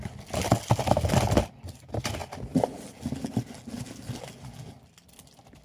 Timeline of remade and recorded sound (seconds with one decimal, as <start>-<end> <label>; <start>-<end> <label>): 0.0-5.6 recorded